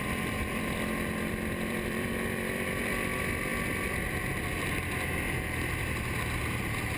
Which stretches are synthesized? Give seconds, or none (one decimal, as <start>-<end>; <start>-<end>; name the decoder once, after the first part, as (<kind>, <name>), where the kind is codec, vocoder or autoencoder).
0.0-3.5 (vocoder, BigVGAN v2); 4.4-7.0